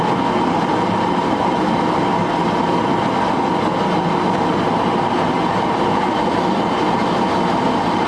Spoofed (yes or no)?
no